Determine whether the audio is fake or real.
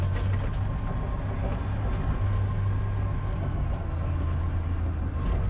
real